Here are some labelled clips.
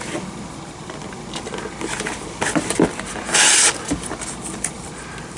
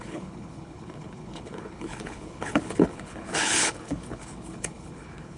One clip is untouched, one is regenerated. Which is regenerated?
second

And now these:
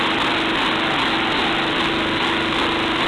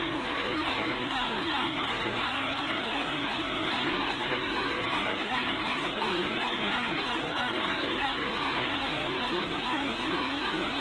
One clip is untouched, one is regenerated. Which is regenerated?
second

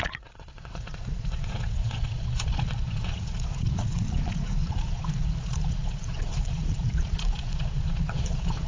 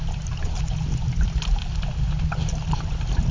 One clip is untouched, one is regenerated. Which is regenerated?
first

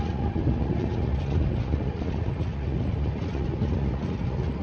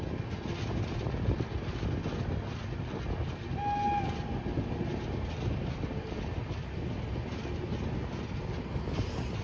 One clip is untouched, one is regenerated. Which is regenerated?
first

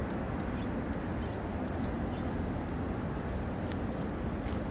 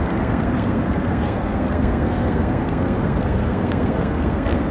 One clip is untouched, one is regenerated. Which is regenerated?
second